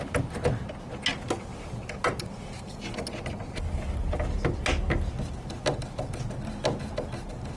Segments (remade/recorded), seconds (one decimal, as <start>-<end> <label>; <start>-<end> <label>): 0.0-7.6 recorded